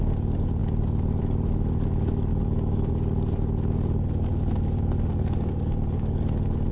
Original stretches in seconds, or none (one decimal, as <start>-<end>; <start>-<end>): 0.0-2.3; 2.9-6.7